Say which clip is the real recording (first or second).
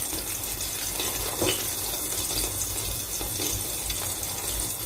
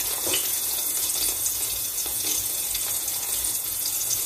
first